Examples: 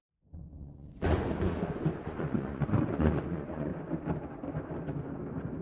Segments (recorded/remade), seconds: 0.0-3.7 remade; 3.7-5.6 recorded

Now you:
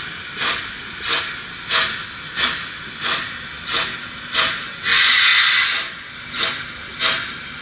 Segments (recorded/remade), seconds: 0.0-7.6 recorded